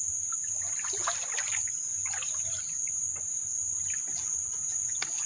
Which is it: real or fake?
real